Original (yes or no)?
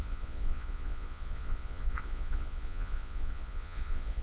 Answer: no